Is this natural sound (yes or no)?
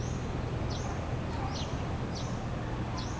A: yes